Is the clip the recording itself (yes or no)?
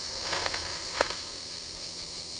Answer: no